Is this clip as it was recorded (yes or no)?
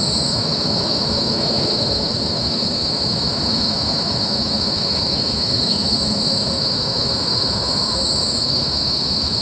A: no